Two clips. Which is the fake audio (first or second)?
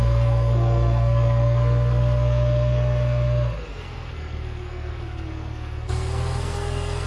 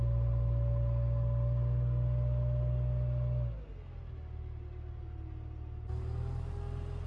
first